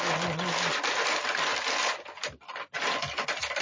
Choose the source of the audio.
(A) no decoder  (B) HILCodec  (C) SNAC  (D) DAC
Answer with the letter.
A